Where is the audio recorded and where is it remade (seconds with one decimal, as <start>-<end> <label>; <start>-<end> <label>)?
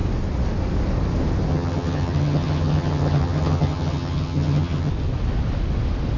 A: 0.0-1.5 recorded; 1.5-4.9 remade; 4.9-6.2 recorded